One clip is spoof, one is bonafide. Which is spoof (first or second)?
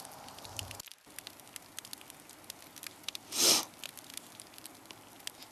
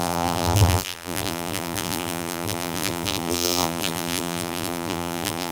second